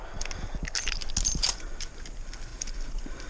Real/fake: real